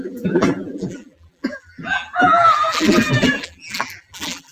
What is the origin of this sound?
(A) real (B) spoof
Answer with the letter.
B